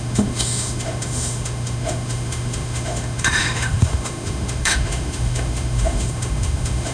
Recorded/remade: remade